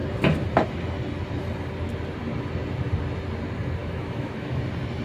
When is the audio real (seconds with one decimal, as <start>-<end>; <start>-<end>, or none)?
0.0-3.8; 4.6-5.0

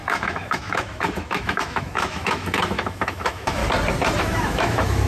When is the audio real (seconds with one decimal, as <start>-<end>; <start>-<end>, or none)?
3.6-4.2

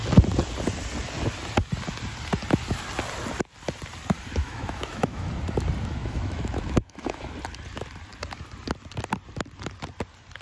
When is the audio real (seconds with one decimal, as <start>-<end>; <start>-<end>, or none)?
0.0-4.4; 5.3-6.0; 7.3-10.4

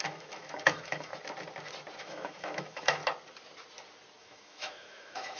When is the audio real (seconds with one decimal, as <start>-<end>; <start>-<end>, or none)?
1.1-2.0; 3.0-4.2